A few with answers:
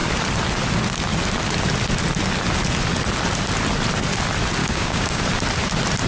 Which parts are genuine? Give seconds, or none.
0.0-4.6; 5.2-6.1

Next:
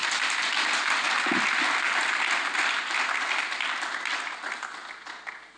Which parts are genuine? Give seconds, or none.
0.0-5.6

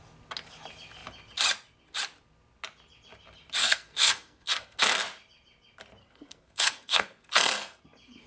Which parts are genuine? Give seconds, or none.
0.0-3.6; 4.8-6.0; 7.8-8.3

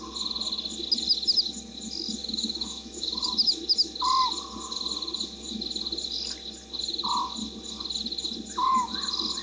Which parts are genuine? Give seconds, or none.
0.0-2.2; 3.3-9.4

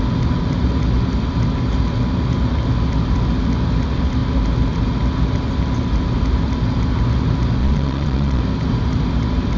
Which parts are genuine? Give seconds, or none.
0.0-7.6; 8.4-9.6

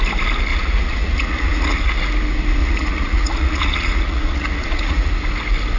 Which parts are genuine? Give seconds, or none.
0.0-0.5; 1.9-2.6; 5.1-5.8

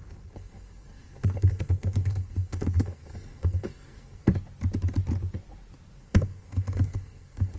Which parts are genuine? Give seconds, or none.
4.3-6.0